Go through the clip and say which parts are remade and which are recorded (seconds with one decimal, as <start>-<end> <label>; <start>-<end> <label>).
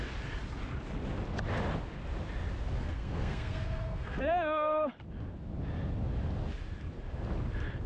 0.0-2.8 recorded; 2.8-4.9 remade; 4.9-7.9 recorded